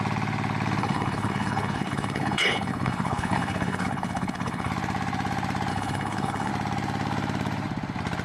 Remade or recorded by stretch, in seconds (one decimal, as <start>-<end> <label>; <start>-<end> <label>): 0.0-0.8 recorded; 0.8-4.7 remade; 4.7-5.7 recorded; 5.7-6.5 remade; 6.5-8.2 recorded